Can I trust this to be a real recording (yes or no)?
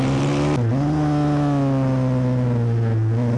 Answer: yes